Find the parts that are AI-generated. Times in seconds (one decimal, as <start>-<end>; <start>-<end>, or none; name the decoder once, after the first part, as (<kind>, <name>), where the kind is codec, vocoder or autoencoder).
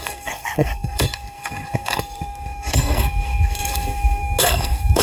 0.0-5.0 (codec, SNAC)